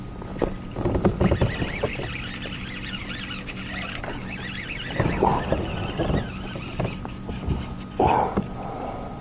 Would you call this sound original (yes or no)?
yes